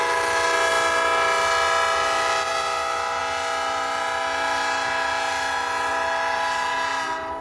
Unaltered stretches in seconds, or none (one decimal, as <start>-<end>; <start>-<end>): 0.0-7.4